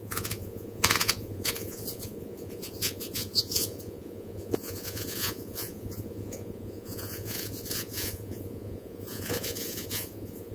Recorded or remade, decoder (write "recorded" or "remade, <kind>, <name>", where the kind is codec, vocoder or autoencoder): remade, vocoder, Vocos